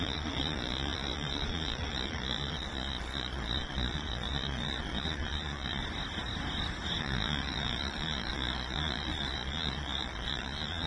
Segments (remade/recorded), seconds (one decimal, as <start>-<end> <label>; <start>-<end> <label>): 0.0-5.8 remade; 5.8-7.0 recorded; 7.0-10.9 remade